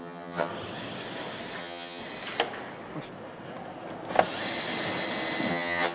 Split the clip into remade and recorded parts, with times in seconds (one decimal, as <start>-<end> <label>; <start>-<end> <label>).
0.0-0.5 remade; 0.5-1.6 recorded; 1.6-2.0 remade; 2.0-5.5 recorded; 5.5-5.9 remade